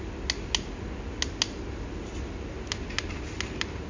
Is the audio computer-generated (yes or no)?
no